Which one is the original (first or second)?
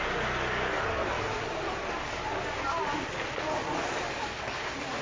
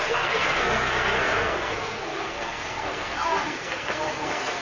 first